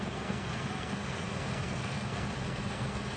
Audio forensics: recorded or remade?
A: remade